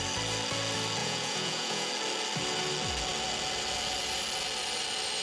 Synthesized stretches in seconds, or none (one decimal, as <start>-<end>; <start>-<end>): 1.0-1.9